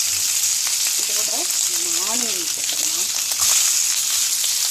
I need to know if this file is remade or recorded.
recorded